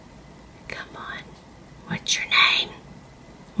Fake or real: real